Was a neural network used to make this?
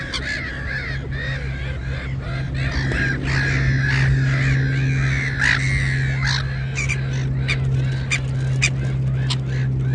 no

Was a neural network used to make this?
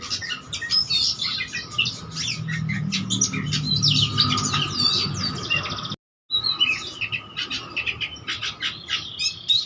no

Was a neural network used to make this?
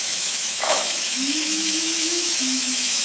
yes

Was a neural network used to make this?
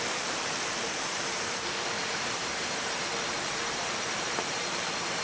yes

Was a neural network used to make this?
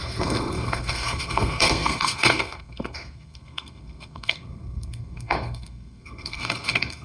yes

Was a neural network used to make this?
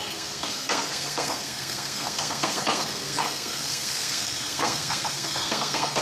yes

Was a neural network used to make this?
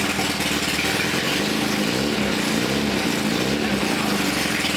no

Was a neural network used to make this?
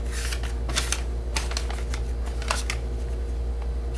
no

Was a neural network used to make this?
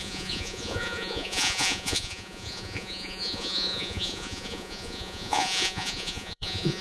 yes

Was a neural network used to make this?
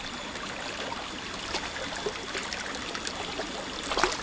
no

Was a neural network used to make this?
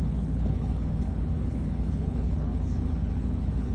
yes